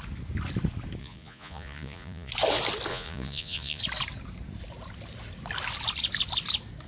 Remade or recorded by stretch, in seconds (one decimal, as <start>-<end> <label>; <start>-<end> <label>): 0.0-1.0 recorded; 1.0-2.3 remade; 2.3-2.9 recorded; 2.9-3.8 remade; 3.8-6.9 recorded